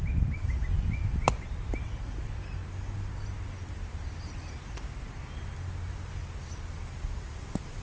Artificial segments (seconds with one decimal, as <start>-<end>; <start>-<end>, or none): none